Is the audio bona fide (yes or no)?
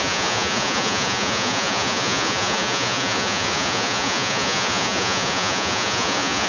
no